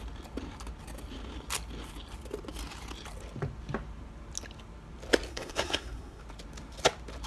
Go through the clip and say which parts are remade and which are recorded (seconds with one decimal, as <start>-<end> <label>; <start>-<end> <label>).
0.0-5.3 recorded; 5.3-6.2 remade; 6.2-7.3 recorded